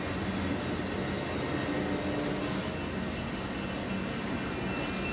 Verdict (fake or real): real